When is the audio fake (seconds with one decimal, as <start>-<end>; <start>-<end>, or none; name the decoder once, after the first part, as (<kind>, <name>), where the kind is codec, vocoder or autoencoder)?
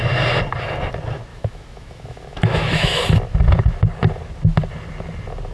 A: 1.3-3.0 (autoencoder, DAC-VAE)